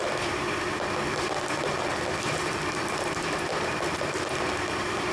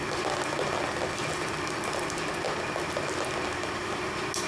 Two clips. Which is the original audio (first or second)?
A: second